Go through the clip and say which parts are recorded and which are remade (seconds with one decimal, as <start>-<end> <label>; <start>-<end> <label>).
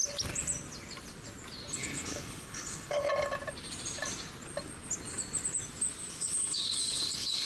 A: 0.0-1.7 recorded; 1.7-3.1 remade; 3.1-6.2 recorded; 6.2-7.5 remade